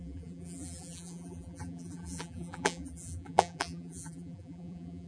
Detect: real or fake fake